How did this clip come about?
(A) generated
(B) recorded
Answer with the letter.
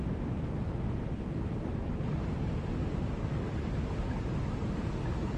B